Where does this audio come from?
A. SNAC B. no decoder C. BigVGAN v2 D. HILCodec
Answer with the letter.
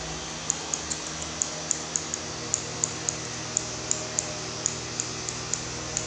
B